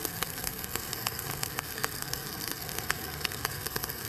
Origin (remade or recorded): remade